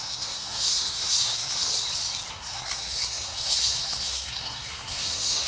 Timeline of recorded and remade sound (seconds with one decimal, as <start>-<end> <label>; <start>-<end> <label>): 0.0-1.7 remade; 1.7-2.3 recorded; 2.3-5.5 remade